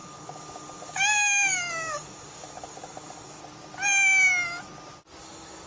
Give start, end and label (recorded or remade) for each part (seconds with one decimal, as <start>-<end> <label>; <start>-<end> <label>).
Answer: 0.0-3.4 remade; 3.4-5.2 recorded; 5.2-5.7 remade